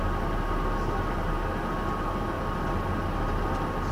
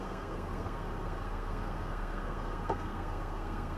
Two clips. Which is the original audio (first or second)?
first